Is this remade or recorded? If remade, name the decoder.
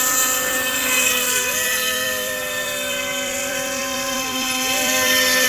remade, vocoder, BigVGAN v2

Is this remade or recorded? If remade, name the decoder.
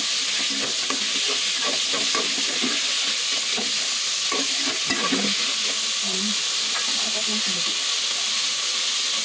recorded